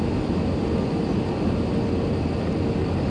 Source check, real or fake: real